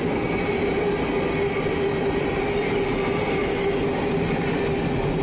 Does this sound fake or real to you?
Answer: real